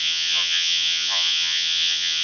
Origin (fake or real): fake